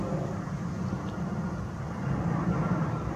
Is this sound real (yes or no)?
yes